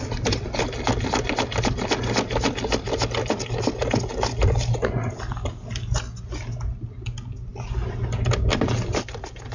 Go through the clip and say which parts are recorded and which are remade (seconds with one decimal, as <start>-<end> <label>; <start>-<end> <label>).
0.0-9.5 recorded